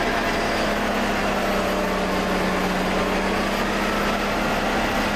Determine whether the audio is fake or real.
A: real